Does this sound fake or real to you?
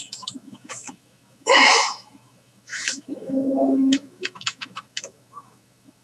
fake